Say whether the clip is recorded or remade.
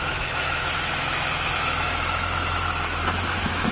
remade